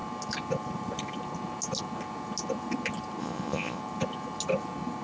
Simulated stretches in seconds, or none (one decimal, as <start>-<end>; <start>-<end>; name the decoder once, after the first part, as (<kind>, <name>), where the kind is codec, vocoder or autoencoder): 3.2-3.8 (vocoder, Vocos)